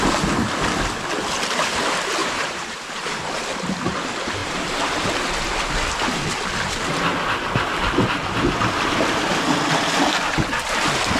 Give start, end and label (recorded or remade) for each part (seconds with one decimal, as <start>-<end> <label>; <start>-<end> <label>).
0.0-2.2 recorded; 2.2-3.3 remade; 3.3-4.4 recorded; 4.4-5.1 remade; 5.1-11.2 recorded